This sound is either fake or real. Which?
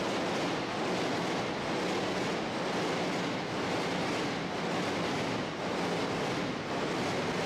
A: real